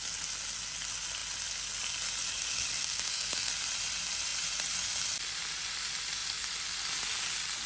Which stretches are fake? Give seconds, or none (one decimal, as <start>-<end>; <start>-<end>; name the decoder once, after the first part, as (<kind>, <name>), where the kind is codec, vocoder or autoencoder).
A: 2.8-3.5 (codec, SNAC)